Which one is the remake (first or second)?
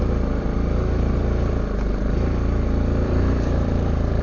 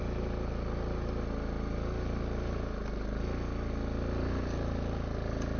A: first